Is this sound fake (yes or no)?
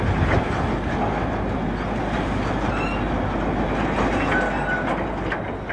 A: no